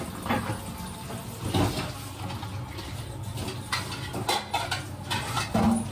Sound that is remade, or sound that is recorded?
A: recorded